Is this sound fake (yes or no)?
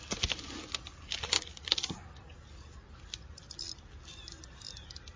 no